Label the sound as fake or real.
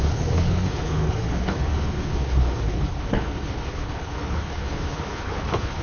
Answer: fake